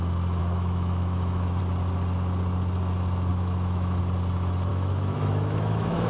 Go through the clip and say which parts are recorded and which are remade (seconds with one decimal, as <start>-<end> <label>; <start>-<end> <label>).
0.0-0.4 recorded; 0.4-1.6 remade; 1.6-3.3 recorded; 3.3-4.0 remade; 4.0-4.7 recorded; 4.7-6.1 remade